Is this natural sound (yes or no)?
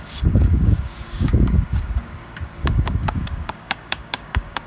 no